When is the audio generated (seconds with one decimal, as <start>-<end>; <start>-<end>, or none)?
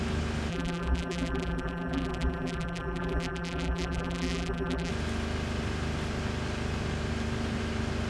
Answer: 0.5-4.9